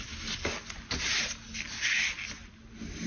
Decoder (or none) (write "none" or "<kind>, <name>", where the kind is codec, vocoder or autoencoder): none